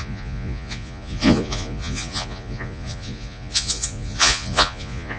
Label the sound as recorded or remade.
remade